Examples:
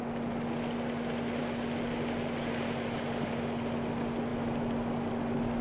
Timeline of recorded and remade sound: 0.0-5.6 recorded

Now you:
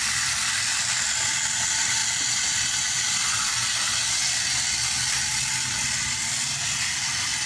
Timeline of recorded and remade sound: 0.0-7.5 recorded

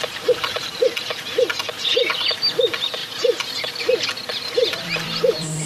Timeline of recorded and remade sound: 0.0-5.7 remade

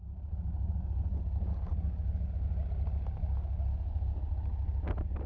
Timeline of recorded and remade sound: 0.0-5.3 recorded

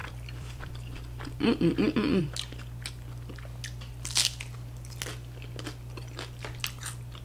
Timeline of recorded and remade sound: 0.0-2.2 remade; 2.2-7.2 recorded

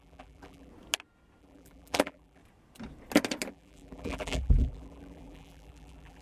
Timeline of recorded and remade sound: 0.0-0.7 remade; 0.7-1.4 recorded; 1.4-2.4 remade; 2.4-3.5 recorded; 3.5-6.2 remade

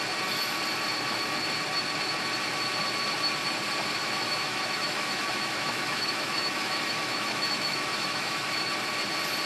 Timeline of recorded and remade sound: 0.0-4.0 recorded; 4.0-8.7 remade; 8.7-9.5 recorded

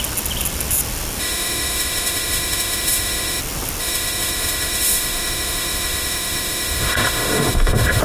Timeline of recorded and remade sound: 0.0-1.2 recorded; 1.2-3.4 remade; 3.4-3.8 recorded; 3.8-8.0 remade